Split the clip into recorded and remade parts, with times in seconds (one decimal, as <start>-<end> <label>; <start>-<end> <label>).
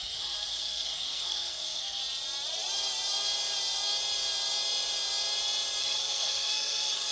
0.0-2.0 remade; 2.0-5.8 recorded; 5.8-7.1 remade